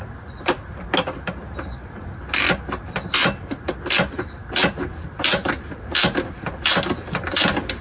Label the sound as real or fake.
real